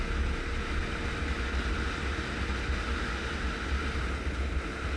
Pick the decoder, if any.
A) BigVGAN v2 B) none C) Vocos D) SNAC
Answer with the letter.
B